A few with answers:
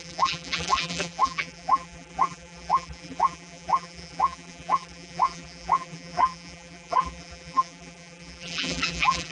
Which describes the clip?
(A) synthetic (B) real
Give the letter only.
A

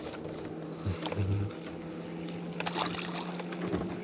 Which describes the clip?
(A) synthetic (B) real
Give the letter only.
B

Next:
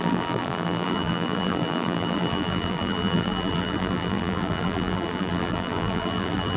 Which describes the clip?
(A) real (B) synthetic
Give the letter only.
B